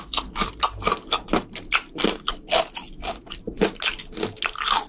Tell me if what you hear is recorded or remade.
recorded